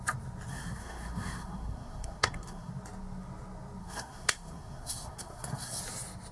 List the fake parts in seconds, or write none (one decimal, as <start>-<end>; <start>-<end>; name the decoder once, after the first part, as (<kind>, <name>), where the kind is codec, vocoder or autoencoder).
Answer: 0.5-2.7 (codec, SNAC); 3.8-5.8